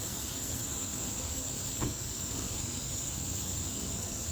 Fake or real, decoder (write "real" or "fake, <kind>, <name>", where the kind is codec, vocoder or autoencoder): fake, codec, SNAC